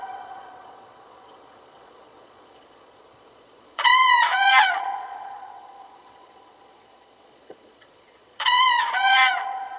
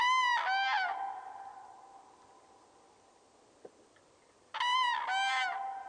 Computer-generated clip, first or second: first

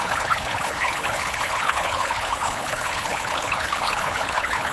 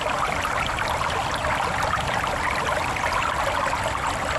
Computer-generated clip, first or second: first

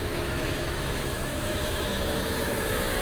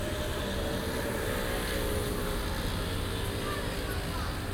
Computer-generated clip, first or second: first